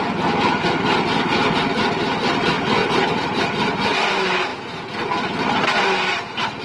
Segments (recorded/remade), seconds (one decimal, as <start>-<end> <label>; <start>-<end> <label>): 0.0-2.8 recorded; 2.8-3.4 remade; 3.4-6.6 recorded